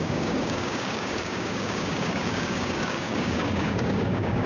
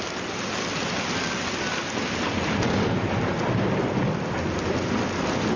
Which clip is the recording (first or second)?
second